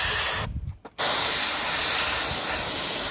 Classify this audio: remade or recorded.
recorded